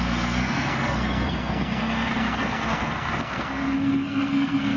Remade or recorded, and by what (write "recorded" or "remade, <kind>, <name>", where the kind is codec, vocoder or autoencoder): remade, codec, SNAC